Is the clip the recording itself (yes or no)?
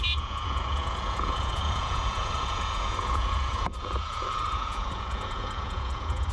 no